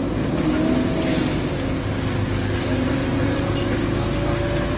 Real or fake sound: real